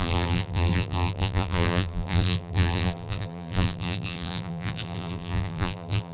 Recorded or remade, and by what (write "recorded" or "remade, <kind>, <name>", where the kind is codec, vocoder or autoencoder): remade, vocoder, BigVGAN v2